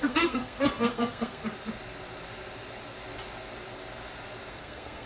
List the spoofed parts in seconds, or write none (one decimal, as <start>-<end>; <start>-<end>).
0.0-1.4; 4.5-5.1